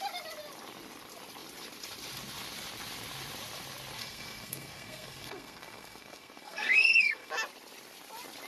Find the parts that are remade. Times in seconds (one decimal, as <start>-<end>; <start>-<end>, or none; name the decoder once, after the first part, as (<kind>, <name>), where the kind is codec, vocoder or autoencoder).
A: 4.0-7.3 (codec, SNAC)

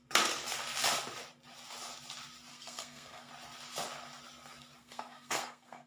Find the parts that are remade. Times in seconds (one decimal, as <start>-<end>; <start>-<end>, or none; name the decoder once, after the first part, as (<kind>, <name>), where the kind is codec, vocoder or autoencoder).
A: 2.5-3.3 (codec, SNAC); 4.8-5.9

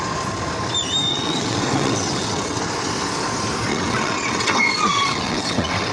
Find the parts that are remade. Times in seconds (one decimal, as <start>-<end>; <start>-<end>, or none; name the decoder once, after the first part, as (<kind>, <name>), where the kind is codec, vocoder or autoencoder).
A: 1.1-2.6 (vocoder, WaveNeXt); 3.7-5.9

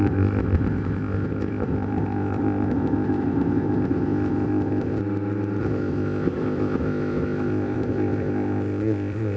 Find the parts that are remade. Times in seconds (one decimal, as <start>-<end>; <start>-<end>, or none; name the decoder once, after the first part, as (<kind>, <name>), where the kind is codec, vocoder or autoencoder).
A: 0.0-5.0 (codec, ZipCodec); 5.6-9.4

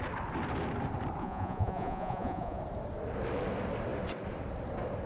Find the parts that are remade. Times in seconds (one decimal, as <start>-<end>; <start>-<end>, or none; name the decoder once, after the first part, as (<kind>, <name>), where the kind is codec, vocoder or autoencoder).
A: 1.2-2.6 (vocoder, Vocos)

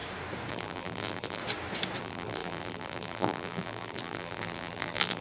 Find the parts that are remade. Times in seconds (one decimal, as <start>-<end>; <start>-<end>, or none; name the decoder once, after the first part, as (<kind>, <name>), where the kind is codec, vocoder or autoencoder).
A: 0.5-1.4 (vocoder, BigVGAN v2); 2.0-5.2

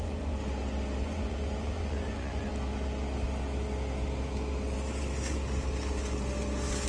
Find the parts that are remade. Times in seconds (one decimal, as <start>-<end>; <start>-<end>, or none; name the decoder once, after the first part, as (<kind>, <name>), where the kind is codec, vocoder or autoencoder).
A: 0.0-0.4 (vocoder, Vocos); 1.0-2.5